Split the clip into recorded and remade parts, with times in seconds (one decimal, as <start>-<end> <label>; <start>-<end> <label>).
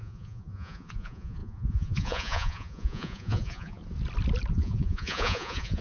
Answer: 0.0-3.8 remade; 3.8-4.5 recorded; 4.5-5.8 remade